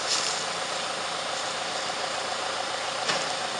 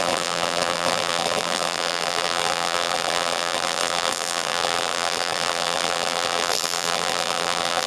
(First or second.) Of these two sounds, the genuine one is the first